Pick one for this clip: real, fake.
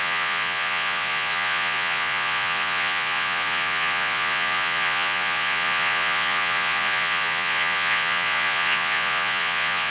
fake